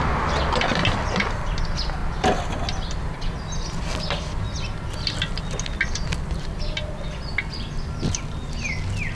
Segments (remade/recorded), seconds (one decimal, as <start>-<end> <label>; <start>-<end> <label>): 0.0-9.2 recorded